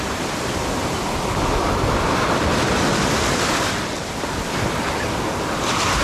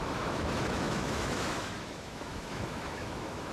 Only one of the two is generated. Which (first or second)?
second